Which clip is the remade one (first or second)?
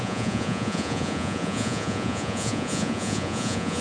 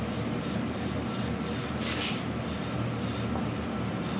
first